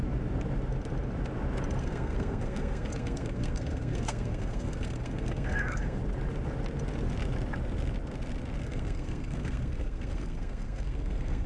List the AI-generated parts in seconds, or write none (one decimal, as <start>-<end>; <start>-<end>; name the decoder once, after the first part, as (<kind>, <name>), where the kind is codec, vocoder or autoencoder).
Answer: 1.8-6.0 (codec, SNAC); 8.6-11.5